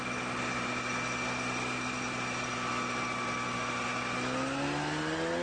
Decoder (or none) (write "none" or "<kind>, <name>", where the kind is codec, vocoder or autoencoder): none